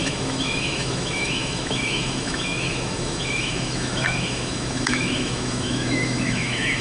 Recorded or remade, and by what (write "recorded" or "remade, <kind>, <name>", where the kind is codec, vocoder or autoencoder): remade, autoencoder, DAC-VAE